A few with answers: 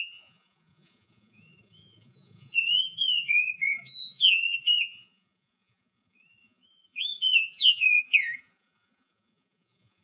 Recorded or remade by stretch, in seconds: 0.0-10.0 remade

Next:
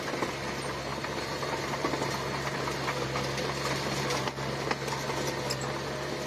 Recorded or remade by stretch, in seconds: 0.0-6.3 recorded

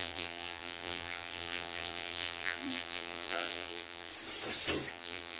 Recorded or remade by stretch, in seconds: 0.0-4.1 remade; 4.1-4.9 recorded; 4.9-5.4 remade

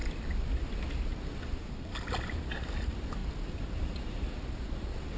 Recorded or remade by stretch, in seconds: 0.0-3.2 recorded; 3.2-4.4 remade; 4.4-5.2 recorded

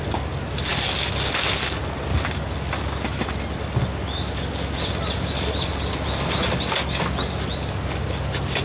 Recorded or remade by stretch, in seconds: 0.0-8.6 recorded

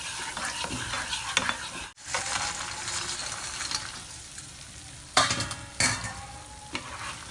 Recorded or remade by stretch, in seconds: 0.0-3.2 recorded; 3.2-4.6 remade; 4.6-7.3 recorded

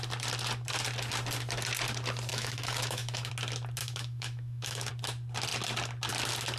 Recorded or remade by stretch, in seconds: 0.0-2.3 recorded; 2.3-3.3 remade; 3.3-3.8 recorded; 3.8-4.9 remade; 4.9-6.6 recorded